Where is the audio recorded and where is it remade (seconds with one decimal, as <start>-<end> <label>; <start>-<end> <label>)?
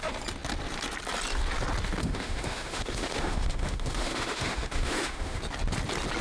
0.0-2.0 recorded; 2.0-5.4 remade; 5.4-6.2 recorded